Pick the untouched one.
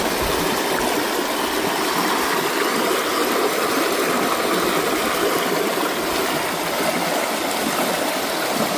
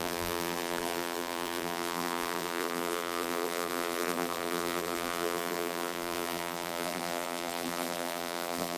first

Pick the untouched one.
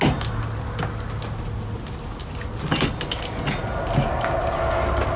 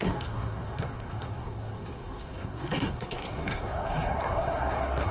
first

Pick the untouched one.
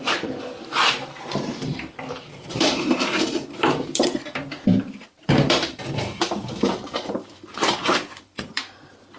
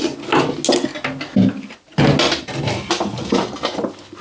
second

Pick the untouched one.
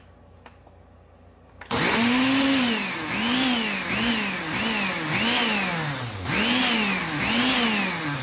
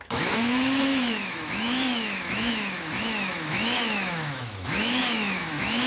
first